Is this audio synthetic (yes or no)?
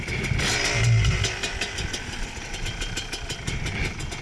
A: no